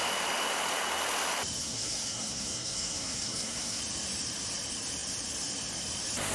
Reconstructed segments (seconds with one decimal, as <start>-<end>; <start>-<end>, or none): 1.6-3.8